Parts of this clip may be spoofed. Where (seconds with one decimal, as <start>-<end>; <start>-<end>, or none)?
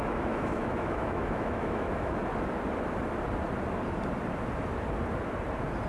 0.0-2.2